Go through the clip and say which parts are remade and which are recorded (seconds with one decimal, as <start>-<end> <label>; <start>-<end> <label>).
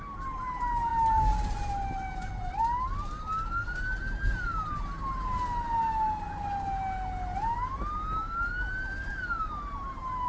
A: 0.0-10.3 recorded